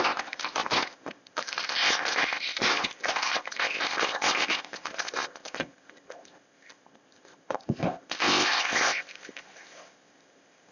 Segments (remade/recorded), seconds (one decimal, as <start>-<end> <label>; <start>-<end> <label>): 0.0-10.7 remade